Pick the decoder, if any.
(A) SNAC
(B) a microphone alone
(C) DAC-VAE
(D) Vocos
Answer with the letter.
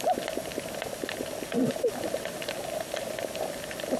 B